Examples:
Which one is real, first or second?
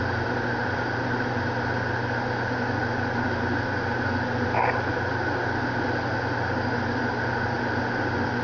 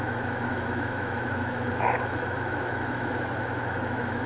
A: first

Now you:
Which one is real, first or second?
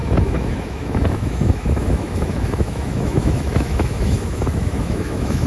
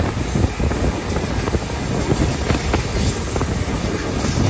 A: second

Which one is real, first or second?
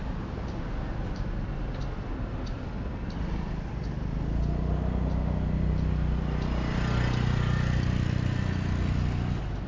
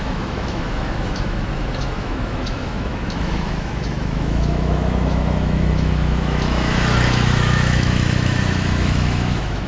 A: first